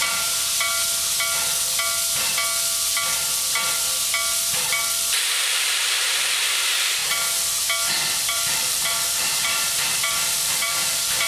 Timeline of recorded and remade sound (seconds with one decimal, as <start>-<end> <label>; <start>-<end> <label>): 0.0-0.7 remade; 0.7-4.5 recorded; 4.5-7.0 remade; 7.0-8.3 recorded; 8.3-11.3 remade